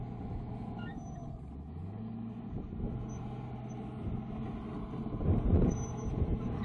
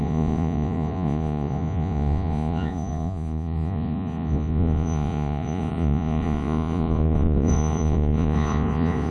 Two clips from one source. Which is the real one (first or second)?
first